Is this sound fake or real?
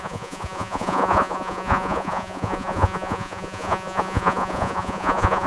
fake